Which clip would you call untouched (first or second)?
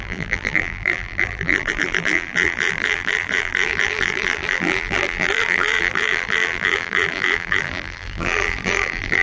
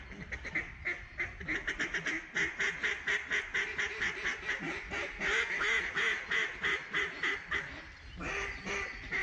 second